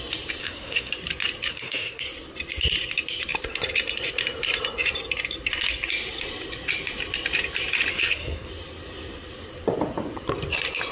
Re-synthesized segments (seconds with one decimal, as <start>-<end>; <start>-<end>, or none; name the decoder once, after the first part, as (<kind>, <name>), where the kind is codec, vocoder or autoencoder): 0.4-0.9 (codec, SNAC); 1.5-2.0; 7.9-8.5